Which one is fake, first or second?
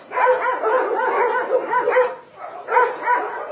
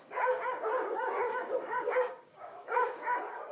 second